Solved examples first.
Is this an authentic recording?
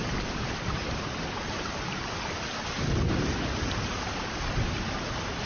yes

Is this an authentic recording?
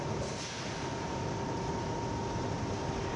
yes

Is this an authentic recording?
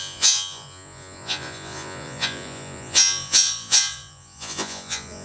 no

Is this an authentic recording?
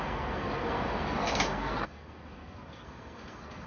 no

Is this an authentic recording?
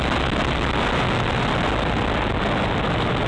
yes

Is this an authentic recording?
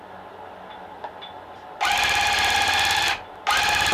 yes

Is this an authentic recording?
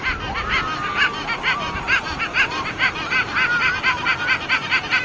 yes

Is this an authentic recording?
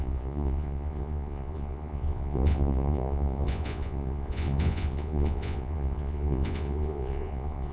no